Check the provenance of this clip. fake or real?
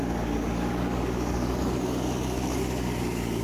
fake